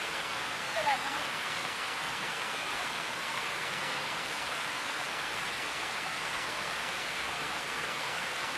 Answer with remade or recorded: remade